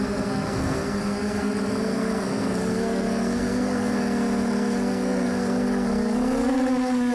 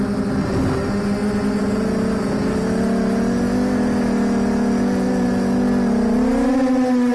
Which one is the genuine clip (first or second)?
second